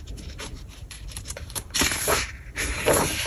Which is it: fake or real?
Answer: fake